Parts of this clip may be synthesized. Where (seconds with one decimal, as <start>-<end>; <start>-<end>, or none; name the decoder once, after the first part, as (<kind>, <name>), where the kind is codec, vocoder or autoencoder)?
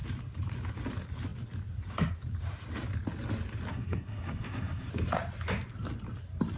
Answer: 3.7-4.9 (codec, SNAC)